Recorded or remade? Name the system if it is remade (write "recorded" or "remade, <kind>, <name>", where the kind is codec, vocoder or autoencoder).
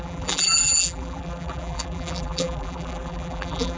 remade, vocoder, BigVGAN v2